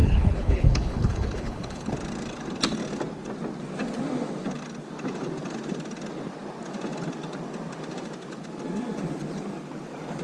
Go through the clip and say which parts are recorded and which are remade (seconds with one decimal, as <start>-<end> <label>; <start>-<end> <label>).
0.0-1.9 remade; 1.9-10.2 recorded